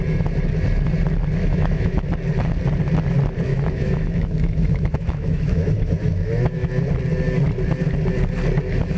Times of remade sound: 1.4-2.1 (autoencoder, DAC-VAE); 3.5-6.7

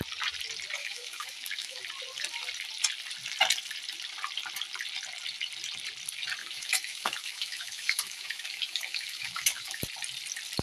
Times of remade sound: 0.8-1.8 (autoencoder, DAC-VAE); 6.4-9.8

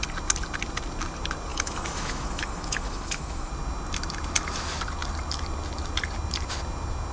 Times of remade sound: 1.5-3.5 (autoencoder, DAC-VAE)